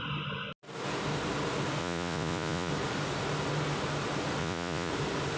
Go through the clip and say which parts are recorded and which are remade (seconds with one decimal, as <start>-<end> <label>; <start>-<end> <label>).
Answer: 0.0-1.8 recorded; 1.8-2.7 remade; 2.7-4.4 recorded; 4.4-4.9 remade; 4.9-5.4 recorded